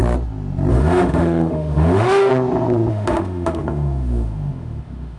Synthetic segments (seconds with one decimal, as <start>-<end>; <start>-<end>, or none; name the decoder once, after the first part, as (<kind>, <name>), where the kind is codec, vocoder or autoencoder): 0.7-2.3 (autoencoder, DAC-VAE); 2.9-5.2